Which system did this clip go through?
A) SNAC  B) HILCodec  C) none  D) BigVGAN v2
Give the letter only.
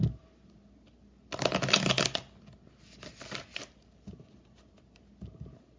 C